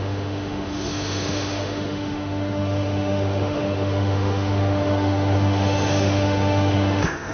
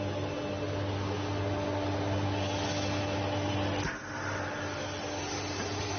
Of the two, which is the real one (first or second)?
second